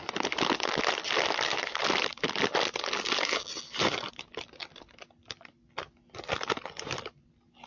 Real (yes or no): yes